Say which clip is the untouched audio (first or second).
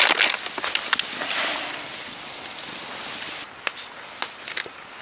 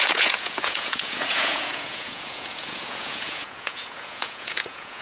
first